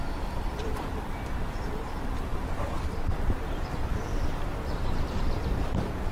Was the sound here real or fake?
fake